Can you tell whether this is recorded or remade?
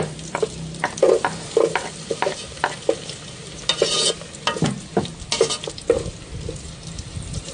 recorded